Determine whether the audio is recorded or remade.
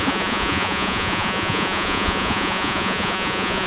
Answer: remade